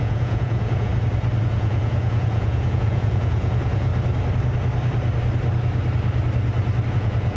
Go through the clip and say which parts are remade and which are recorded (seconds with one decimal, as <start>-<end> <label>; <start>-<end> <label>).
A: 0.0-0.9 remade; 0.9-1.4 recorded; 1.4-3.9 remade; 3.9-6.9 recorded; 6.9-7.4 remade